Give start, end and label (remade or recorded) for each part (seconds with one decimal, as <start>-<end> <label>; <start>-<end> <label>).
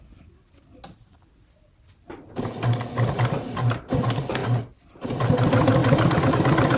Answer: 0.0-6.8 recorded